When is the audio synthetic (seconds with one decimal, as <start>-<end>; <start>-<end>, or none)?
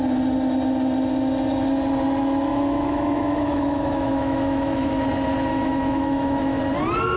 2.5-5.0; 5.5-6.6